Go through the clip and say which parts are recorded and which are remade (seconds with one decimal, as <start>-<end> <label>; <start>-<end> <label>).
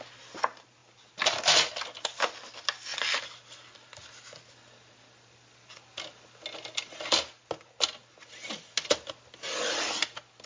0.0-10.5 recorded